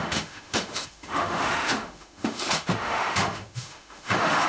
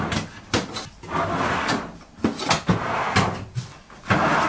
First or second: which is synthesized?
first